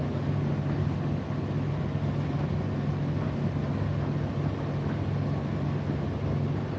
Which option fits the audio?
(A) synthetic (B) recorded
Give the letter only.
B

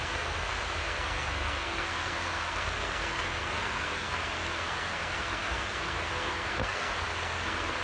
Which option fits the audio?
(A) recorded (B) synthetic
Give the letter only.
B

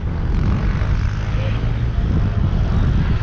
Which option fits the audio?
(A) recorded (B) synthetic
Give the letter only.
A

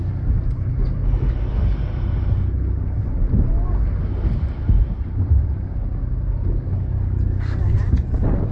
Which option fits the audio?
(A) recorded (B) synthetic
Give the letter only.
A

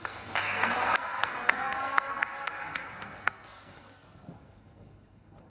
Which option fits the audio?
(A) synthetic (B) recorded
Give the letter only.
A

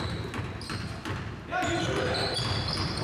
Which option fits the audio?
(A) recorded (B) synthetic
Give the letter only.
A